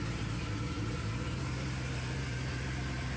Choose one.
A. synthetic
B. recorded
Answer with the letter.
B